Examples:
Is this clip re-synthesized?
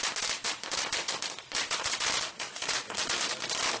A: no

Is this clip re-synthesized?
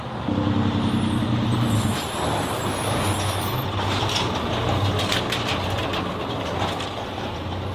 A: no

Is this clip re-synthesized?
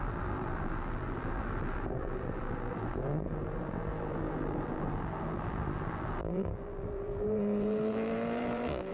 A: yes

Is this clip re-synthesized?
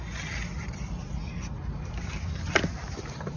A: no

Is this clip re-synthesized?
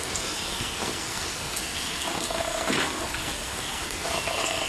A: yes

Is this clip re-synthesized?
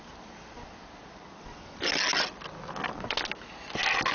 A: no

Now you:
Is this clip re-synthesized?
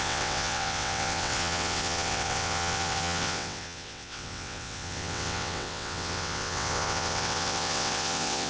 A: yes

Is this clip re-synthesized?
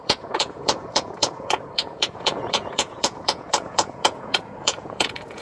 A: yes